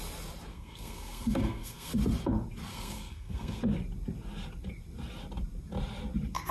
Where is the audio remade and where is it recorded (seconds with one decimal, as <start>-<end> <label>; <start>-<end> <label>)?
0.0-0.5 recorded; 0.5-1.9 remade; 1.9-2.7 recorded; 2.7-3.6 remade; 3.6-6.5 recorded